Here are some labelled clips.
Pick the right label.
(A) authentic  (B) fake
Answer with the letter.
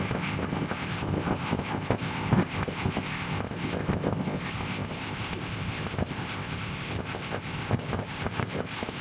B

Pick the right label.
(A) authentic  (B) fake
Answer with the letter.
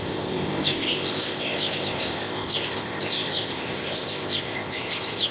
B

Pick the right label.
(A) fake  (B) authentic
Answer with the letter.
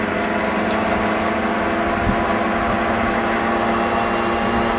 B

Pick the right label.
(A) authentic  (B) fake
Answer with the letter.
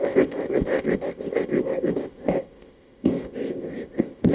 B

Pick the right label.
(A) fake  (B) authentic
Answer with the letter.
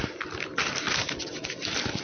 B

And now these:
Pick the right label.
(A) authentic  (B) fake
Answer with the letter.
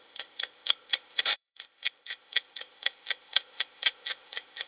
B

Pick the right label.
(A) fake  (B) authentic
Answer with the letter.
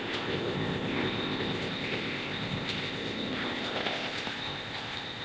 A